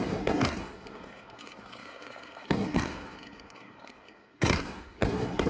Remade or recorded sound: remade